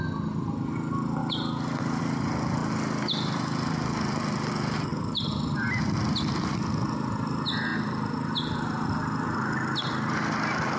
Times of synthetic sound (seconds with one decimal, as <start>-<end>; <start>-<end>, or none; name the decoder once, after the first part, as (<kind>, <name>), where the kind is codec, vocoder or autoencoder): 2.6-3.4 (vocoder, BigVGAN v2); 4.9-5.7